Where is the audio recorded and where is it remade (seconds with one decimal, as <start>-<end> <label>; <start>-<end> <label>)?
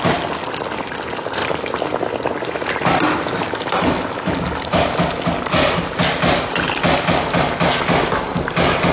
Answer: 0.0-8.9 recorded